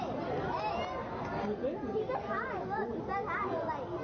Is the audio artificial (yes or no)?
no